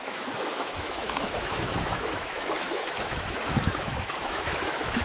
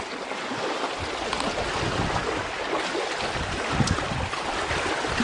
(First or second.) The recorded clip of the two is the second